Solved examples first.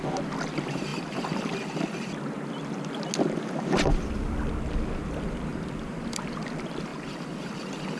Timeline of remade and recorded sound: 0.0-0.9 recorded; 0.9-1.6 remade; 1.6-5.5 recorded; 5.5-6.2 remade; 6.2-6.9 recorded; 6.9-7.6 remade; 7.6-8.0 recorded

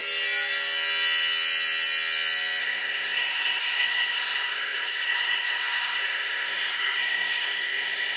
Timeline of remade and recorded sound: 0.0-2.6 recorded; 2.6-8.2 remade